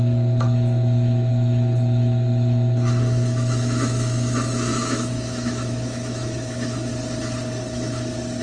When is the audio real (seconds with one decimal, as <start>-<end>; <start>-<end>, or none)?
6.9-8.4